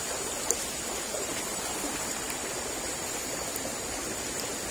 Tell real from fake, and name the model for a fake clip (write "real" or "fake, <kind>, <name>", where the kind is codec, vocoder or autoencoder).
real